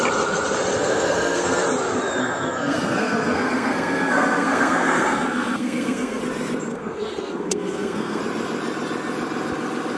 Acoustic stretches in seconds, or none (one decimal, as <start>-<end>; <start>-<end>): 0.0-0.8; 1.6-2.2; 6.2-6.7; 8.2-10.0